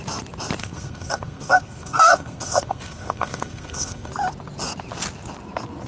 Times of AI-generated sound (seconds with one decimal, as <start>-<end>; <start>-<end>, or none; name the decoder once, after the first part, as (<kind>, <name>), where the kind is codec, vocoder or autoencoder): 0.6-4.1 (codec, SNAC)